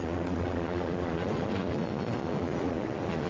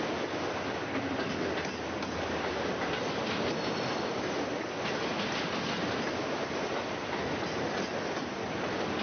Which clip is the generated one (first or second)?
first